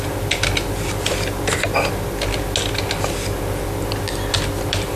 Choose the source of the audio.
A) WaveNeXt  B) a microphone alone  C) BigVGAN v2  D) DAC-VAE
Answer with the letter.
B